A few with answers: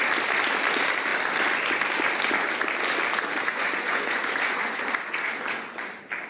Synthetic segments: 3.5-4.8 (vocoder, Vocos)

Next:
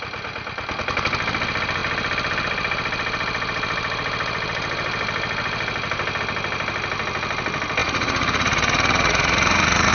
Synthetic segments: 7.8-9.9 (vocoder, Vocos)

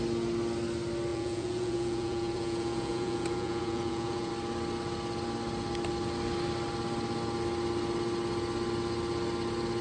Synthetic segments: 1.1-4.3 (vocoder, Vocos)